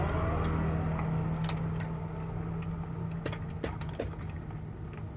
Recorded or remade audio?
recorded